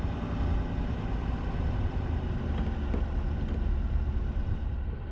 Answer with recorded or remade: recorded